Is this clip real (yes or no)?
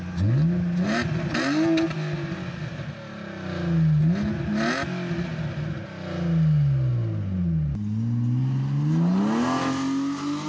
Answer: yes